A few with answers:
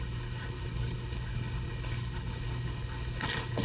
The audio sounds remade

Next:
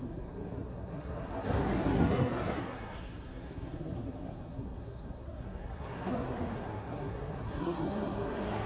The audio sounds remade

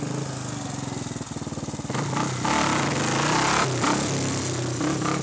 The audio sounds recorded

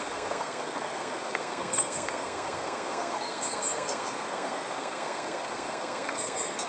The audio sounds remade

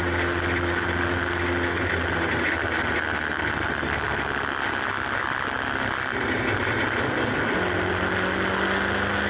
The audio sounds recorded